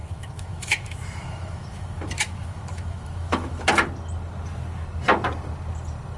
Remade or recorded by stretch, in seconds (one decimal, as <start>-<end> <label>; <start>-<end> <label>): 0.0-3.7 remade; 3.7-6.2 recorded